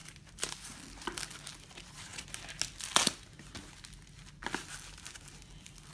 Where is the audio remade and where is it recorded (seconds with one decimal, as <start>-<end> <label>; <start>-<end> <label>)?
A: 0.0-5.9 recorded